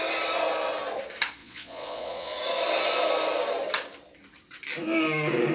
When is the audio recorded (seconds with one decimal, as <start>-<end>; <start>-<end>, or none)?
0.0-1.4; 2.4-5.5